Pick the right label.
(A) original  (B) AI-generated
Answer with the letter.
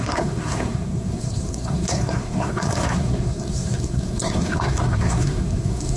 B